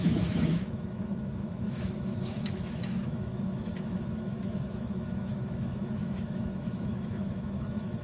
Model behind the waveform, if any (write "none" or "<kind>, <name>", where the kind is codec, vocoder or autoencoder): autoencoder, DAC-VAE